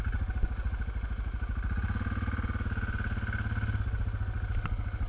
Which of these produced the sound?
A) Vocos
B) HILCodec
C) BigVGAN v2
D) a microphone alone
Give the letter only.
D